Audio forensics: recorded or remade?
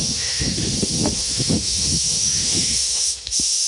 remade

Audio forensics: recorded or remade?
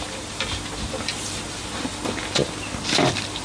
remade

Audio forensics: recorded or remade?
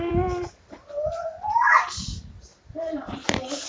remade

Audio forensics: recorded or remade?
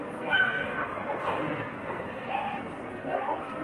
remade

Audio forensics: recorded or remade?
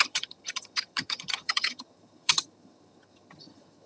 remade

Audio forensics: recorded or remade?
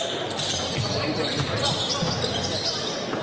recorded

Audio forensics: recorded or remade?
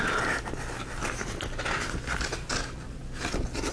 recorded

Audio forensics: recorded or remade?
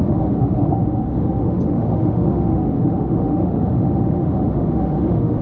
remade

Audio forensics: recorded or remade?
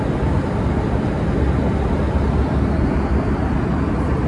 recorded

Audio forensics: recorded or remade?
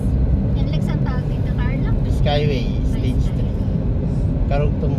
recorded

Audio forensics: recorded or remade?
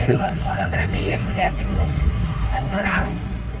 remade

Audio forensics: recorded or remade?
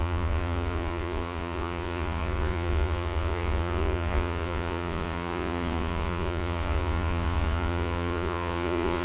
remade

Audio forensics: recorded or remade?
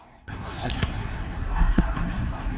remade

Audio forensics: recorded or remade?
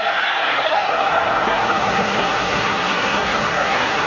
remade